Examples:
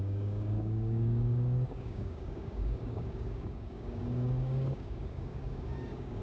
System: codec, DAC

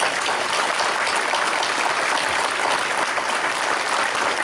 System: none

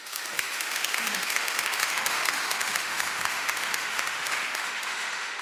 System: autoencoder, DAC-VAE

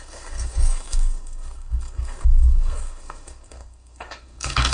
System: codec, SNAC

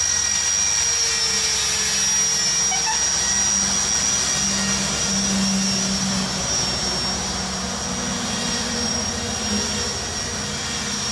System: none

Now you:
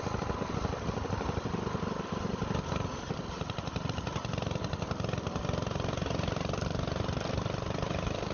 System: none